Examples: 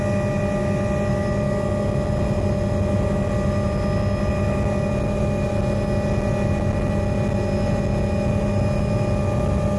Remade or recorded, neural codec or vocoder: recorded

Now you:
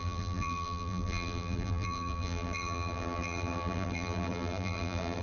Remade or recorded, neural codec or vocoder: remade, vocoder, BigVGAN v2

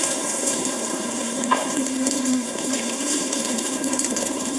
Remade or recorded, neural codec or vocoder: remade, codec, SNAC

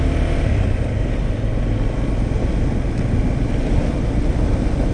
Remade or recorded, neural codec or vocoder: recorded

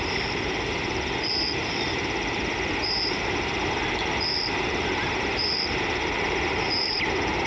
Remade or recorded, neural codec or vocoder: remade, vocoder, BigVGAN v2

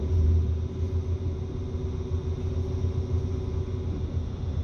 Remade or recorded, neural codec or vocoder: recorded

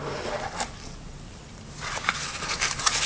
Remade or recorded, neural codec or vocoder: recorded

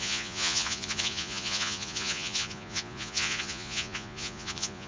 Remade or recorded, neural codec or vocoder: remade, vocoder, Vocos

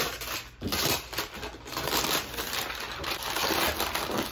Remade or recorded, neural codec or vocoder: recorded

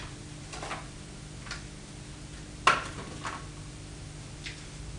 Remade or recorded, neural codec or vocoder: recorded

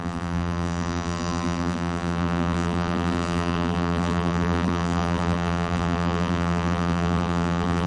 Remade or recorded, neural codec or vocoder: remade, vocoder, BigVGAN v2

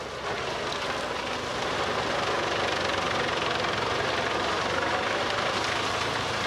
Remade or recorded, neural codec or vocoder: recorded